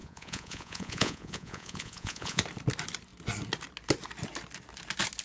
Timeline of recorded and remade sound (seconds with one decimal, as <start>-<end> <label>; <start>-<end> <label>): 0.0-2.4 remade; 2.4-5.2 recorded